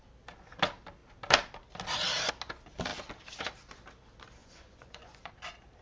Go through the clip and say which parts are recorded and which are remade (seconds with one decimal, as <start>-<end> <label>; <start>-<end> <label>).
0.0-4.4 recorded; 4.4-5.3 remade; 5.3-5.8 recorded